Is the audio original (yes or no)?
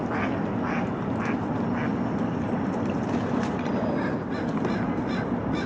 yes